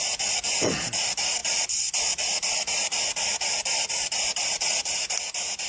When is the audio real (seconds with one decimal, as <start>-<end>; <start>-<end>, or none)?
0.0-5.7